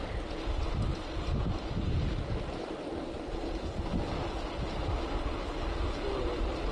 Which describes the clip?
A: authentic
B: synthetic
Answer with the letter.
A